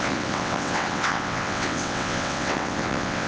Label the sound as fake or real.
fake